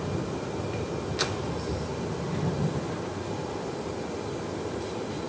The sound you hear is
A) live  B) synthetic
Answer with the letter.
A